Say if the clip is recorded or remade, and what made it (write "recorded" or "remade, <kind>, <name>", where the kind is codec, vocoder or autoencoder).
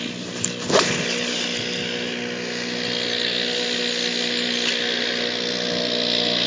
recorded